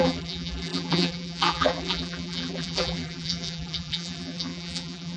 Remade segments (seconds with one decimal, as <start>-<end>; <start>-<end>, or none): 0.0-5.2